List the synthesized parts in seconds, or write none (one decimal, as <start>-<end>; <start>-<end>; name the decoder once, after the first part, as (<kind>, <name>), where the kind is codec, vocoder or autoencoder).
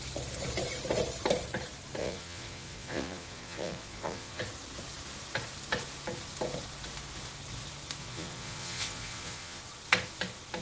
2.0-4.4 (vocoder, Vocos); 8.0-9.6